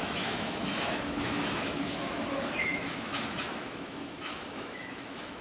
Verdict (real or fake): fake